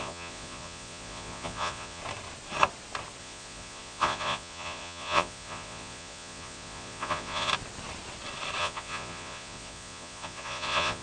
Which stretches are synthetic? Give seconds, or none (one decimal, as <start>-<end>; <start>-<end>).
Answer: 0.0-2.0; 3.2-7.5; 8.6-11.0

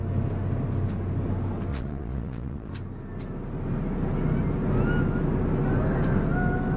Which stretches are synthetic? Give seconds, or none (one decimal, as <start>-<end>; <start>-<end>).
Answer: 1.7-2.7

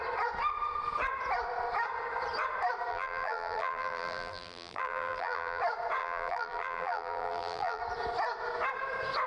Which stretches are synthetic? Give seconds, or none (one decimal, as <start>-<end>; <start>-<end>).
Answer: 2.9-5.6; 6.0-7.8

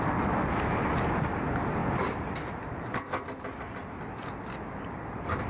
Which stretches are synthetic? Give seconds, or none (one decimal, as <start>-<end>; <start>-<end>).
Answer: none

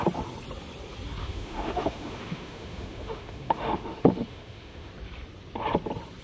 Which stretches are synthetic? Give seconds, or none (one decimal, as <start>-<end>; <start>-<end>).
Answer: 1.2-4.9

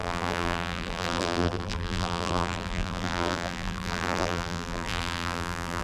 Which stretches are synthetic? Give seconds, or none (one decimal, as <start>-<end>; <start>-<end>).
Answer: 0.0-5.8

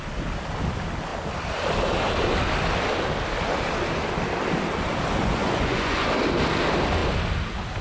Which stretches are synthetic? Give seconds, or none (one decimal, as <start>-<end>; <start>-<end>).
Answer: 5.2-6.1